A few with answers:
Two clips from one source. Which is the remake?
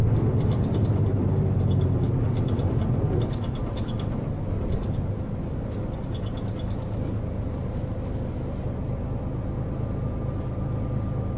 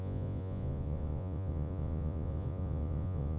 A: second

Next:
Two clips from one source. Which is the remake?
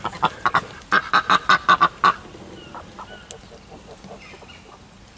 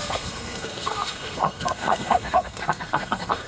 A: second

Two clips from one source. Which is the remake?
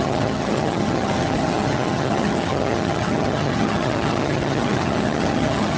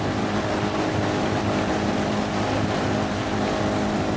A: first